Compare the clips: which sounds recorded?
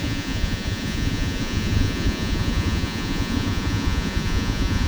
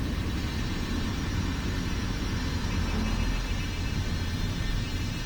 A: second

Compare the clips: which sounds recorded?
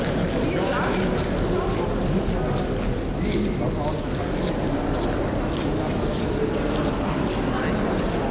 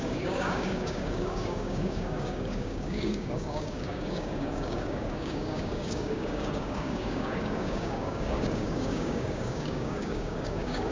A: first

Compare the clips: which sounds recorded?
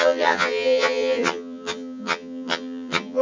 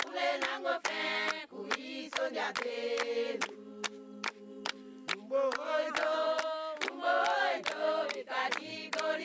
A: second